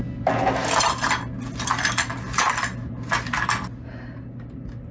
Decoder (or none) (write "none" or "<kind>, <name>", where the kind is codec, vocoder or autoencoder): none